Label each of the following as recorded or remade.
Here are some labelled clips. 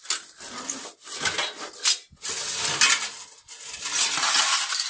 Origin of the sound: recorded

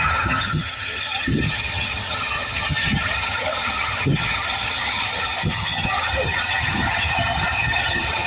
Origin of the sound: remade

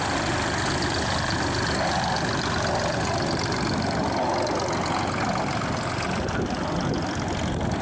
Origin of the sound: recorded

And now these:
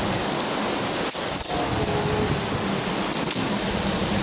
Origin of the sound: recorded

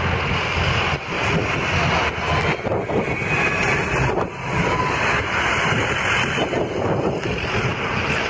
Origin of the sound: recorded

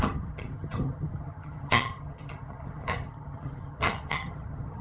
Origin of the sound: remade